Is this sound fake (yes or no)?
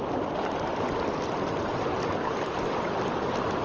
no